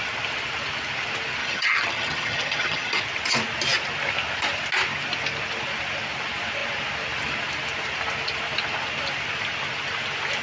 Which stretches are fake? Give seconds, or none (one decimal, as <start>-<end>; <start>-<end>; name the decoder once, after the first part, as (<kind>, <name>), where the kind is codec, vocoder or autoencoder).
1.4-3.0 (vocoder, HiFi-GAN)